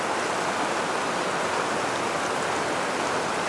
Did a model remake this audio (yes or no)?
no